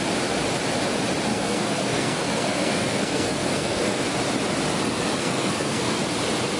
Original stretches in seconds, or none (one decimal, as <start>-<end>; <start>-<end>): 0.0-1.3; 4.0-5.2; 6.0-6.6